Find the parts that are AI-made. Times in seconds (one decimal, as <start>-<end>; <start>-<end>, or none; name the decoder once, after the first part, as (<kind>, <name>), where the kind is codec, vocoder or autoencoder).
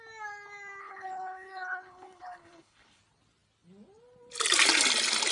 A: 0.8-3.0 (codec, HILCodec)